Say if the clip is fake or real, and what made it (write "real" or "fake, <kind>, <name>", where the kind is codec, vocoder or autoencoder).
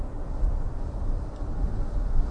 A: real